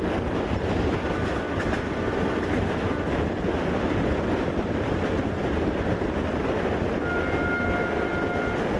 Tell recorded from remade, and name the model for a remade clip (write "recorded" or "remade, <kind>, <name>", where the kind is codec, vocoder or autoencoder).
recorded